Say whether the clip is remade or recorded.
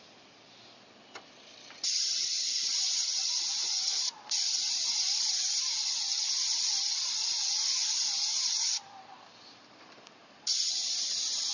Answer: remade